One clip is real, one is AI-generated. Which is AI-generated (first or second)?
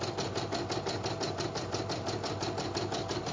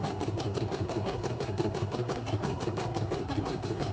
second